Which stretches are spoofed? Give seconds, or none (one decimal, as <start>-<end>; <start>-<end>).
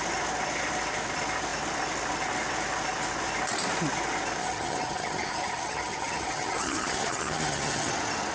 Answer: 4.4-7.9